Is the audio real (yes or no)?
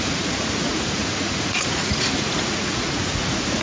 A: no